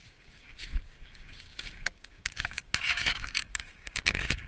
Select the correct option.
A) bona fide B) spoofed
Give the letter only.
B